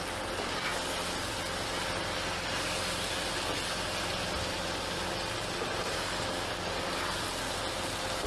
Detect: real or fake real